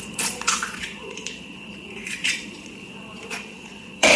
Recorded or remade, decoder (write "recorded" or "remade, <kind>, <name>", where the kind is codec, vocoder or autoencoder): remade, vocoder, Vocos